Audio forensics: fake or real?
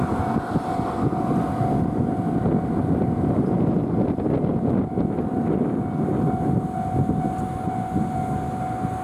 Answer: real